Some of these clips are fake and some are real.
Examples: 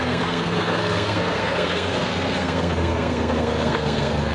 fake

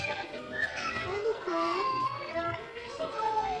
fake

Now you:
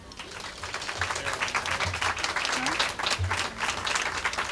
real